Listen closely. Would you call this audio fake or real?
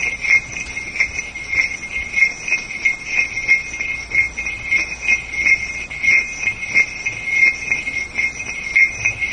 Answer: real